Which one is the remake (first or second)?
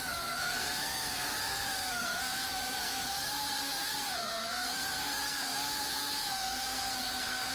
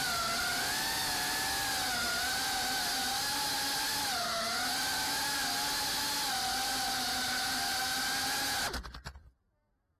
first